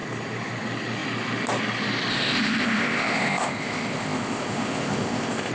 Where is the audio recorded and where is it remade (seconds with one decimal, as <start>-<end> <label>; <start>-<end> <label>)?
0.0-2.1 recorded; 2.1-5.5 remade